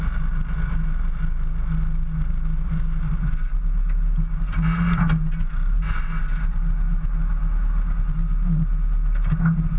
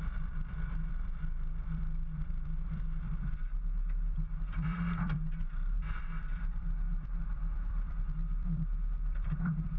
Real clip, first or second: first